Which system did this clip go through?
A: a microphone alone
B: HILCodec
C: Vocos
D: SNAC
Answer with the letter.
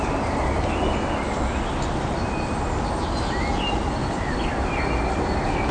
A